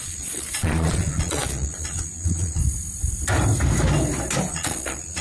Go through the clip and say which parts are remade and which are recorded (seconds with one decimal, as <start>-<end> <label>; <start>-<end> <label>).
0.0-2.6 remade; 2.6-4.5 recorded; 4.5-5.2 remade